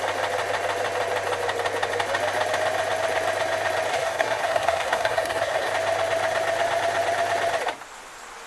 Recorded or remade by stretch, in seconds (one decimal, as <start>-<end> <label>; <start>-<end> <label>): 0.0-3.9 recorded; 3.9-5.7 remade; 5.7-8.5 recorded